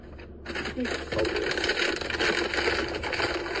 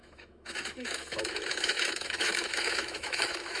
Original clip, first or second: first